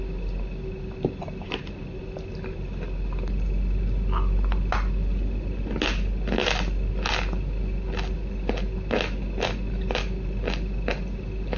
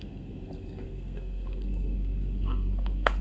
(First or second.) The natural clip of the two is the first